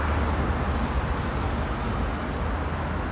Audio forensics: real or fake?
real